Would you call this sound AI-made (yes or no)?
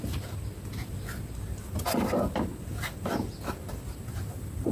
no